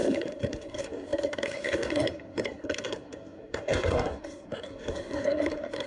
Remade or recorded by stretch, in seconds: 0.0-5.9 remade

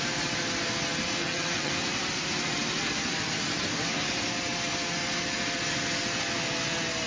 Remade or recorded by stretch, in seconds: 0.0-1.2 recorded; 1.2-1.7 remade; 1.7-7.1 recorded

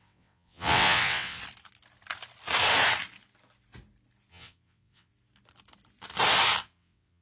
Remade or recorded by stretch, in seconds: 0.0-1.4 remade; 1.4-4.3 recorded; 4.3-5.1 remade; 5.1-6.6 recorded; 6.6-7.2 remade

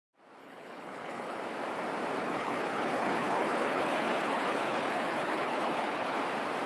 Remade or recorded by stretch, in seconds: 0.0-0.4 recorded; 0.4-1.4 remade; 1.4-2.2 recorded; 2.2-6.2 remade; 6.2-6.7 recorded

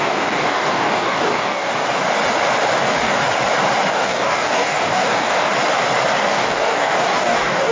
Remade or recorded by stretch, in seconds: 0.0-1.7 remade; 1.7-2.8 recorded; 2.8-3.2 remade; 3.2-3.9 recorded; 3.9-5.5 remade; 5.5-6.3 recorded; 6.3-7.7 remade

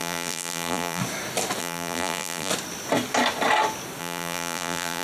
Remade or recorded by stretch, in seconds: 0.0-1.0 remade; 1.0-1.6 recorded; 1.6-2.5 remade; 2.5-4.0 recorded; 4.0-5.0 remade